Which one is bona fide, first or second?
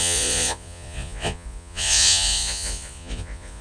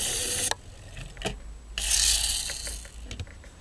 second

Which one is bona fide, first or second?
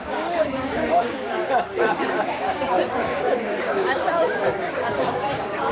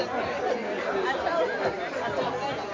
second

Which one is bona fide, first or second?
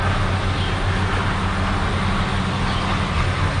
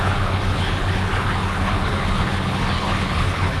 first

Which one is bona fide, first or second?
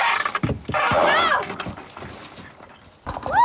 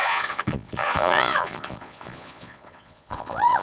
first